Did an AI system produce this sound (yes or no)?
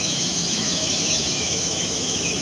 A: yes